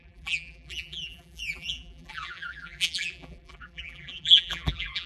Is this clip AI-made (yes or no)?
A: yes